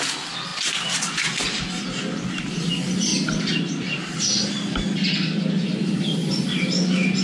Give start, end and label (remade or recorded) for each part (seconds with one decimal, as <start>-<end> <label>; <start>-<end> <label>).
0.0-7.2 recorded